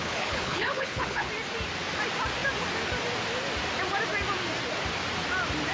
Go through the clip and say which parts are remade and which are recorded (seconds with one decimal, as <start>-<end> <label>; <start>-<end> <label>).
0.0-1.3 remade; 1.3-5.7 recorded